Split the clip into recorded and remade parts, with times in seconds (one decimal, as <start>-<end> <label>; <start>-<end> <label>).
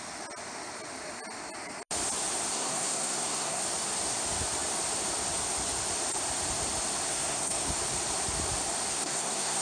0.0-2.5 recorded; 2.5-3.6 remade; 3.6-7.1 recorded; 7.1-7.7 remade; 7.7-8.9 recorded; 8.9-9.6 remade